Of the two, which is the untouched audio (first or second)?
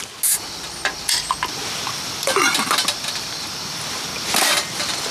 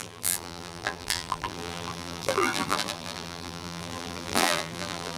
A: first